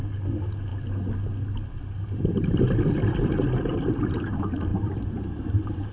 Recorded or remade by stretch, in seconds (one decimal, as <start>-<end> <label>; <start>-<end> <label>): 0.0-4.7 recorded; 4.7-5.9 remade